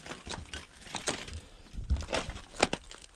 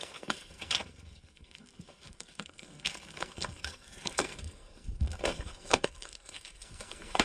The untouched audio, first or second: first